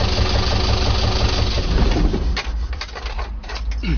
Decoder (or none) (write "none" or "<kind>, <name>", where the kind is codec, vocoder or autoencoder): none